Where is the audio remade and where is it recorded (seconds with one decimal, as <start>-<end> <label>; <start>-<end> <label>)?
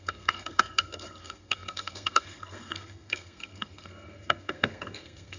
0.0-5.4 remade